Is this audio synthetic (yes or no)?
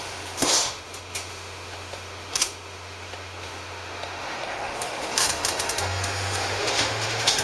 yes